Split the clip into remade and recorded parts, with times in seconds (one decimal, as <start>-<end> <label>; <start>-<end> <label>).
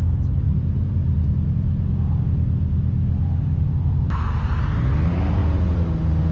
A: 0.0-6.3 recorded